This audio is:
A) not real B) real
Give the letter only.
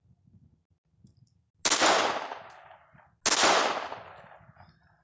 B